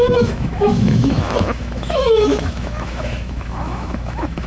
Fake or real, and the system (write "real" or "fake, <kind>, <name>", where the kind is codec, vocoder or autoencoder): fake, autoencoder, DAC-VAE